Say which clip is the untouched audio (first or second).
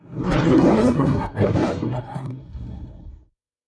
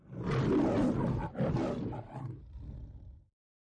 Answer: second